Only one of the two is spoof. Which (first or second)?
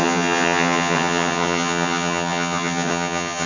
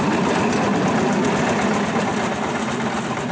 first